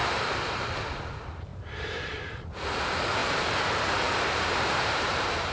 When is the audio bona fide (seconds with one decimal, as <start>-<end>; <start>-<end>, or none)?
0.6-1.5; 2.5-3.2